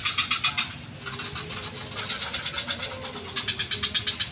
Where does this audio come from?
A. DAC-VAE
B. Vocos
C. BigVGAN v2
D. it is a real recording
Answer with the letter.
D